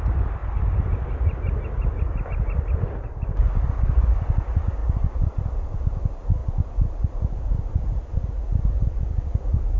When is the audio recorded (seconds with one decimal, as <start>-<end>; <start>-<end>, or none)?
0.0-4.8; 5.5-9.8